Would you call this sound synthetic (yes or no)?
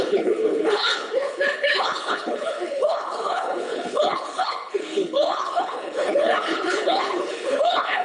yes